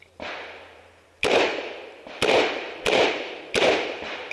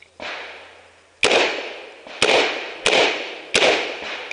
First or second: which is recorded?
second